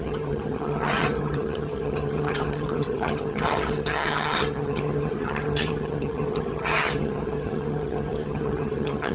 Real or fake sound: fake